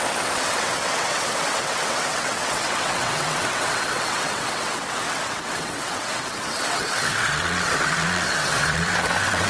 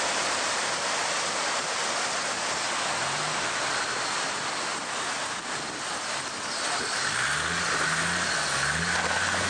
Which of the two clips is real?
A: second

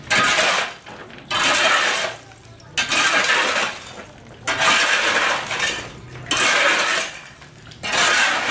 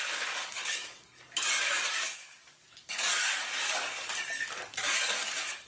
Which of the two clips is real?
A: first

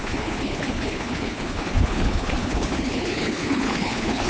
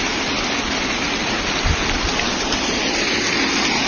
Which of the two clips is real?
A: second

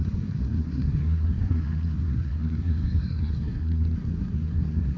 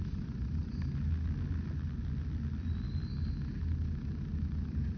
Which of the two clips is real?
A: second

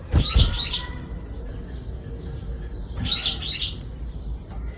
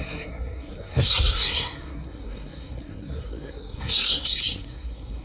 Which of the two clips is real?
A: first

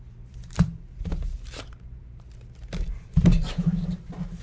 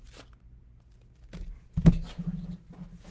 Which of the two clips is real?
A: second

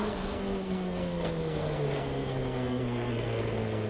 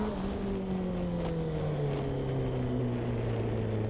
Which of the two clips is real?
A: second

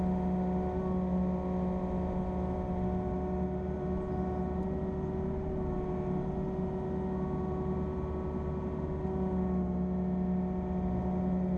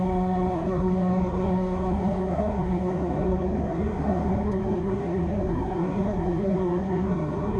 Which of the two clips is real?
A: first